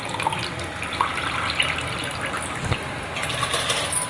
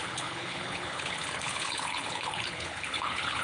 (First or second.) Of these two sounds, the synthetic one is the second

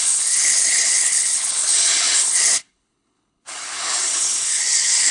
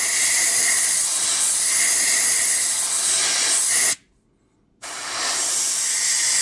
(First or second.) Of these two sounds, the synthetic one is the first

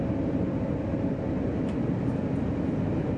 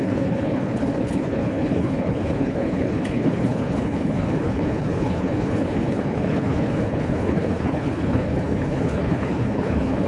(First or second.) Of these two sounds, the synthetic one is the second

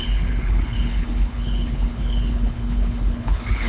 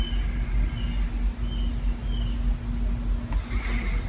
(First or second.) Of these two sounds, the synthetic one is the first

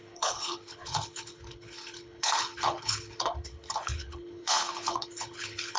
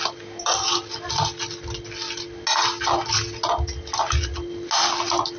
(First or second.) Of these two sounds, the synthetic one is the first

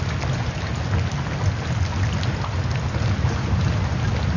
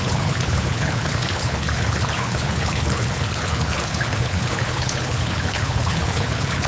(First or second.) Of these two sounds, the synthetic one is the second